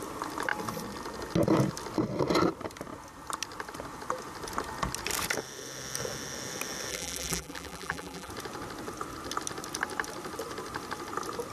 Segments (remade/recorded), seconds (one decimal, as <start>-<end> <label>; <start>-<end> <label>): 0.0-6.9 recorded; 6.9-8.3 remade; 8.3-11.5 recorded